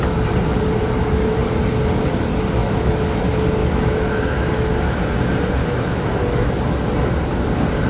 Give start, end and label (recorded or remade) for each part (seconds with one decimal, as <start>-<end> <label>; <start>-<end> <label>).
0.0-2.6 recorded; 2.6-3.2 remade; 3.2-3.6 recorded; 3.6-5.0 remade; 5.0-5.6 recorded; 5.6-6.4 remade; 6.4-7.9 recorded